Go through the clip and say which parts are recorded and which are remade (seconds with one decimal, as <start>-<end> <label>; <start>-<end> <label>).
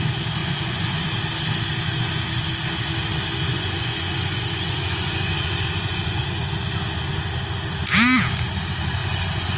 0.0-0.4 recorded; 0.4-1.0 remade; 1.0-3.5 recorded; 3.5-6.4 remade; 6.4-9.0 recorded; 9.0-9.6 remade